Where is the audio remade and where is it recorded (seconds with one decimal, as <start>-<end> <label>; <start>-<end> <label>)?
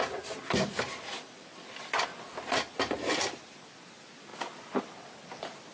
0.0-5.7 recorded